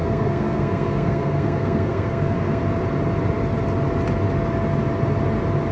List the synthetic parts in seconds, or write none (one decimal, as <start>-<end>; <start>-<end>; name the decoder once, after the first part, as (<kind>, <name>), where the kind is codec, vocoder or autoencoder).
0.0-2.6 (codec, SNAC)